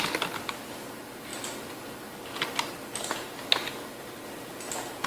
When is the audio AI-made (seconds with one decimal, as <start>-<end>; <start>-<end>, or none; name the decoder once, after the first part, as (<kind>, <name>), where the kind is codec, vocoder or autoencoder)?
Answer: none

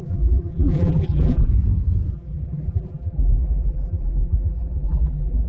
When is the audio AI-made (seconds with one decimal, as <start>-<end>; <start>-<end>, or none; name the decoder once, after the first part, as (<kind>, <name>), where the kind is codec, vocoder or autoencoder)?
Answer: 0.0-1.5 (vocoder, BigVGAN v2); 2.1-5.5

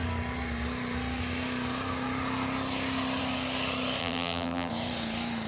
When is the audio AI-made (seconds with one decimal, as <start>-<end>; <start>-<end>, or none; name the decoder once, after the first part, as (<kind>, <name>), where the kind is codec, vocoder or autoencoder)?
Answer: 4.0-4.7 (vocoder, BigVGAN v2)

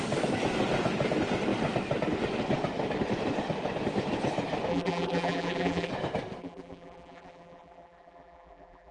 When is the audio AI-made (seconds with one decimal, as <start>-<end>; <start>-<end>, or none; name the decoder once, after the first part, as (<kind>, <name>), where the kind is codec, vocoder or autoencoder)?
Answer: 4.7-5.9 (vocoder, BigVGAN v2); 6.4-8.9

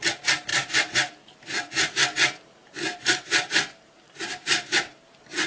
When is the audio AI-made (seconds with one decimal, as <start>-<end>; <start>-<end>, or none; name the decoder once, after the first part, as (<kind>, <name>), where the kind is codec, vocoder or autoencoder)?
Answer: 0.5-1.9 (vocoder, BigVGAN v2); 2.6-5.5

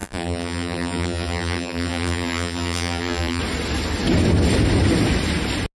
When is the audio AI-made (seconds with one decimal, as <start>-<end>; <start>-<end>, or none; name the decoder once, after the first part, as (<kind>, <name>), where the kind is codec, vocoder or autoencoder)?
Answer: 0.0-3.4 (vocoder, BigVGAN v2)

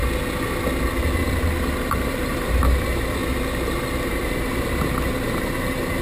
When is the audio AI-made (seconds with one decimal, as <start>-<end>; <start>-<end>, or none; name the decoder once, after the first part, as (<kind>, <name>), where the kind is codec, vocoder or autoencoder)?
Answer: 1.8-3.2 (vocoder, BigVGAN v2); 4.1-6.0

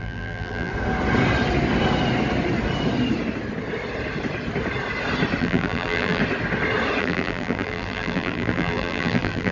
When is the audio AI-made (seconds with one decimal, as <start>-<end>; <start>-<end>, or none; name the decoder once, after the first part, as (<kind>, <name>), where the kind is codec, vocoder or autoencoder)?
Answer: 0.0-0.7 (vocoder, BigVGAN v2); 5.4-6.2; 7.0-9.5